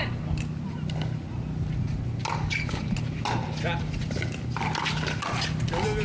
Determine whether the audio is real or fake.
real